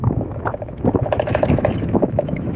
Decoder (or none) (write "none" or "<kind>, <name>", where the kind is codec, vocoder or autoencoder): autoencoder, DAC-VAE